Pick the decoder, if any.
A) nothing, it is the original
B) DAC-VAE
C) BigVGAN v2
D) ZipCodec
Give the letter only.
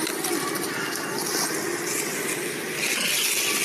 A